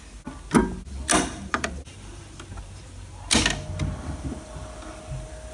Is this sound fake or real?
real